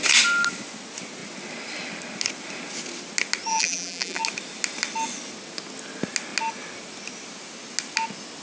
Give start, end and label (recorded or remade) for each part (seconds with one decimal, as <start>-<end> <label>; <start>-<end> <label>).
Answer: 0.0-3.5 recorded; 3.5-4.2 remade; 4.2-8.4 recorded